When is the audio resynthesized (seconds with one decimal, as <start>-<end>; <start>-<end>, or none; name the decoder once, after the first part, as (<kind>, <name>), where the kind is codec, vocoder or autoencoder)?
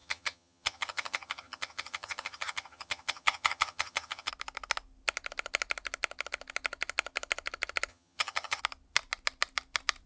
0.0-4.3 (vocoder, HiFi-GAN); 7.9-8.6